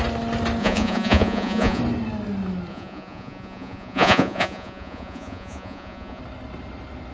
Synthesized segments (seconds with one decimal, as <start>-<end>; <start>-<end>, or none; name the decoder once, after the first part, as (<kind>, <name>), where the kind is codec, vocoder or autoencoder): 0.6-1.8 (vocoder, Vocos); 2.7-6.2